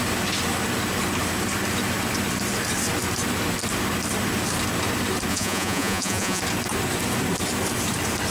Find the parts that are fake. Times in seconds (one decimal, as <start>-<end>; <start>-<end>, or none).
5.3-6.4